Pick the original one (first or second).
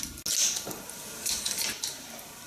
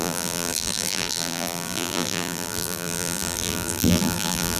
first